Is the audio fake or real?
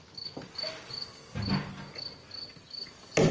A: real